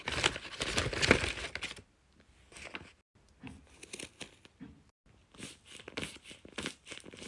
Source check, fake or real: real